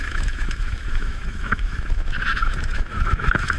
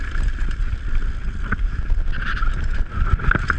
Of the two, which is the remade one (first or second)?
first